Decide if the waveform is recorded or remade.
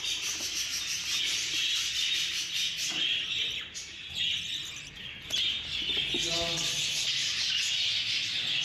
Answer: recorded